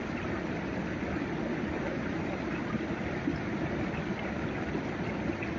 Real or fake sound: real